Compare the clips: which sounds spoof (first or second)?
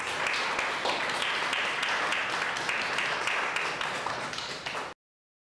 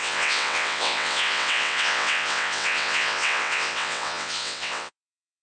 second